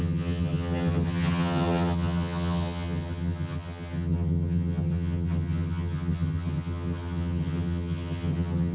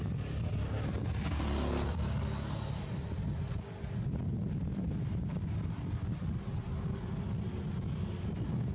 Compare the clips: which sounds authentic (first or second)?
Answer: second